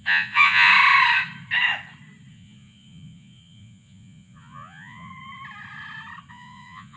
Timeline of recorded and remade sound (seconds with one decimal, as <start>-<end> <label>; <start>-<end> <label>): 0.0-0.7 remade; 0.7-2.3 recorded; 2.3-5.1 remade; 5.1-6.3 recorded; 6.3-7.0 remade